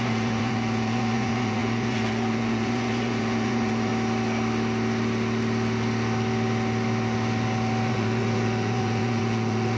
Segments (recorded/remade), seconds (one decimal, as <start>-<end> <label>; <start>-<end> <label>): 0.0-3.9 remade; 3.9-7.9 recorded; 7.9-9.8 remade